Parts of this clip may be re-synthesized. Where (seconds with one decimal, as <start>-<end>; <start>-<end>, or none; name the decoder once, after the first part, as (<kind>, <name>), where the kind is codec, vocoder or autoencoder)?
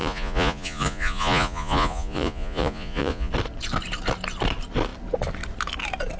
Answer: 0.0-3.3 (vocoder, Vocos)